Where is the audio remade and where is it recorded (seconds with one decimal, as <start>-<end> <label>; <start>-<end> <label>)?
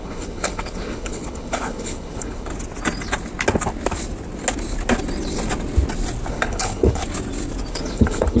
0.0-2.5 remade; 2.5-6.3 recorded; 6.3-7.0 remade; 7.0-7.7 recorded; 7.7-8.4 remade